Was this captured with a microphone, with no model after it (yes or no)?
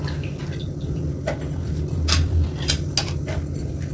yes